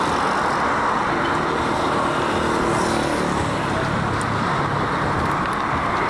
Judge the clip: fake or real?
real